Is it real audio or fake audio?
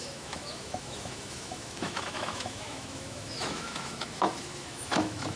fake